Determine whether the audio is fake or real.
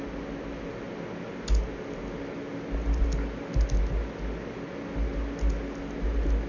real